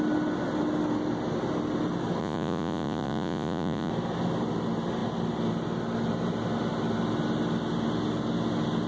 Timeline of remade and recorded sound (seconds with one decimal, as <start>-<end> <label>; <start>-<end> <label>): 0.0-2.2 recorded; 2.2-3.9 remade; 3.9-8.9 recorded